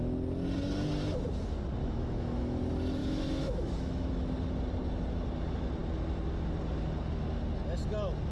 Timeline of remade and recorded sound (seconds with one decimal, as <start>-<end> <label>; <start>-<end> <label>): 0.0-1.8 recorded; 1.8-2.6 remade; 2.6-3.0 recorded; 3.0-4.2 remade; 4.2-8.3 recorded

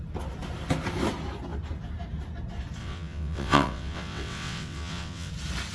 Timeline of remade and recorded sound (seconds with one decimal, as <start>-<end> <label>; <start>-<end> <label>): 0.0-2.8 recorded; 2.8-5.3 remade; 5.3-5.7 recorded

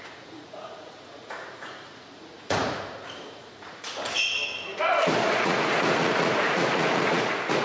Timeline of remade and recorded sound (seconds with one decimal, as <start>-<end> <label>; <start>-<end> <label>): 0.0-3.9 remade; 3.9-5.2 recorded; 5.2-7.6 remade

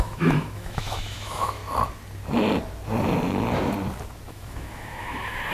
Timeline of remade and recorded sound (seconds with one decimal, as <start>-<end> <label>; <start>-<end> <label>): 0.0-1.6 remade; 1.6-4.3 recorded; 4.3-5.5 remade

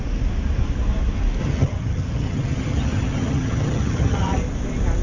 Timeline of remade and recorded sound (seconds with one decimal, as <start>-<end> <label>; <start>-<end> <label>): 0.0-1.4 recorded; 1.4-4.4 remade; 4.4-5.0 recorded

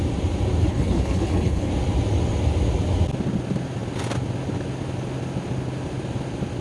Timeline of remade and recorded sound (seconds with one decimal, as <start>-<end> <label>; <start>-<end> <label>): 0.0-0.7 recorded; 0.7-1.7 remade; 1.7-6.6 recorded

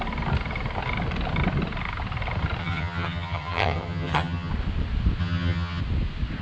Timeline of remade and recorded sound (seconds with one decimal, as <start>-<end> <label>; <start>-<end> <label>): 0.0-2.6 recorded; 2.6-4.5 remade; 4.5-5.2 recorded; 5.2-5.8 remade; 5.8-6.4 recorded